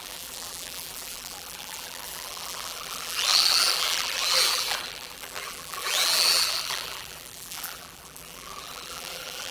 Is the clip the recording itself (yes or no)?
no